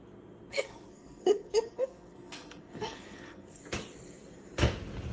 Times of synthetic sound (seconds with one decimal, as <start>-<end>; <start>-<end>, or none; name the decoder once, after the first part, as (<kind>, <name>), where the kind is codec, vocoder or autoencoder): 0.5-3.6 (codec, SNAC)